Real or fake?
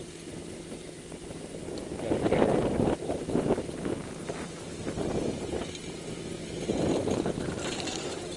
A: real